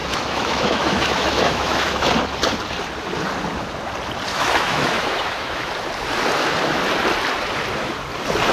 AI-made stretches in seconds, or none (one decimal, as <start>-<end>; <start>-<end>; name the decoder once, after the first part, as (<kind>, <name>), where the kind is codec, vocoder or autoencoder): 0.0-2.1 (autoencoder, DAC-VAE); 4.3-5.7

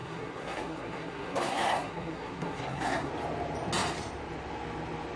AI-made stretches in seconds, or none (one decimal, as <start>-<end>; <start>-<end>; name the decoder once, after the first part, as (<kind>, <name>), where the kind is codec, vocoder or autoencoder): 0.0-3.1 (codec, SNAC)

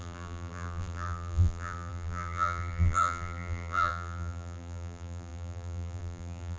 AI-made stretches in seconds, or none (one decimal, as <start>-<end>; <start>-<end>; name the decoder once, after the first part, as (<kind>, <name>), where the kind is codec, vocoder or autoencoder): 0.0-6.6 (vocoder, BigVGAN v2)

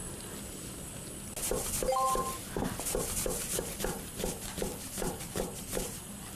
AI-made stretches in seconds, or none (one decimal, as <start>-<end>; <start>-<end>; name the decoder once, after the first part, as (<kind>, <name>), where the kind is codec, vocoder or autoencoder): 4.7-5.4 (vocoder, BigVGAN v2)

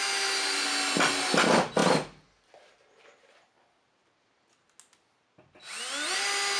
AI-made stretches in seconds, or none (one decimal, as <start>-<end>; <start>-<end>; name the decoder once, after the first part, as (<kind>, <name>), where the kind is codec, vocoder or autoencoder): none